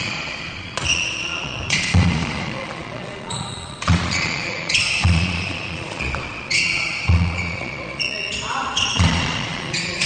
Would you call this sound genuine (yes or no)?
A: no